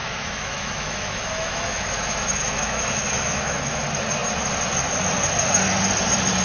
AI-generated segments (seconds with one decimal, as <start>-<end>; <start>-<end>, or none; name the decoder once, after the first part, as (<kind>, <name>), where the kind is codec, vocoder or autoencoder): 0.0-3.8 (autoencoder, DAC-VAE)